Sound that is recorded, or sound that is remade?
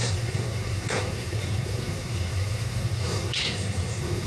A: remade